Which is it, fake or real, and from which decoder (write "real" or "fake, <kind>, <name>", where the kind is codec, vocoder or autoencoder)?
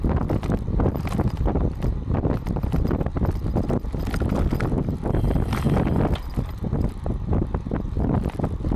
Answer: real